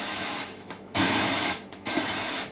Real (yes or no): no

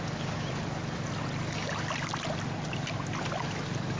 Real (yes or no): yes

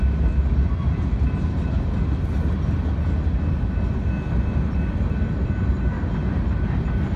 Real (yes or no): yes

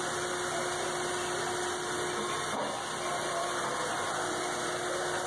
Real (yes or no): yes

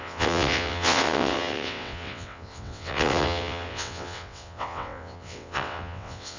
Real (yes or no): no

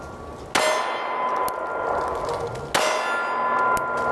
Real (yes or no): yes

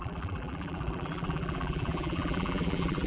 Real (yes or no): no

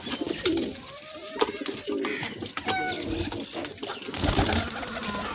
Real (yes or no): yes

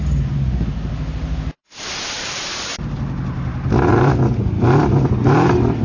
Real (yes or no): yes